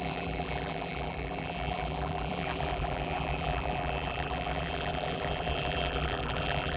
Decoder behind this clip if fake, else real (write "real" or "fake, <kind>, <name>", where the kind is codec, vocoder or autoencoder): fake, vocoder, BigVGAN v2